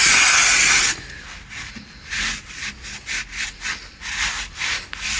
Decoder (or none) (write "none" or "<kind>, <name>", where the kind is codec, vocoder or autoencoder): none